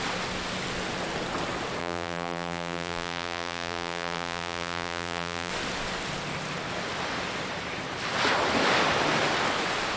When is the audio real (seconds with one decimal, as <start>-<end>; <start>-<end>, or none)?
0.0-1.8; 5.5-10.0